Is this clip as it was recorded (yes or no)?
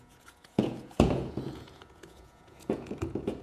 no